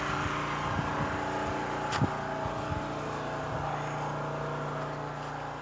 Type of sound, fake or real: real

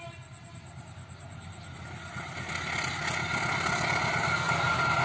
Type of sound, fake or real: real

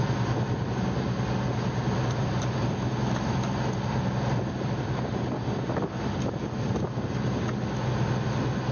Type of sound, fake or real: real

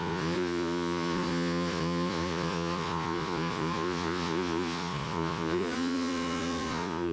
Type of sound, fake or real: fake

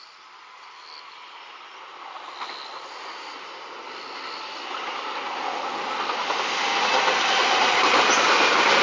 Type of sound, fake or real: real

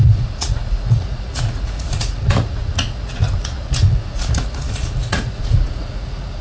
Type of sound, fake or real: fake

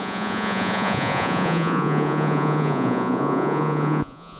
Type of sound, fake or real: fake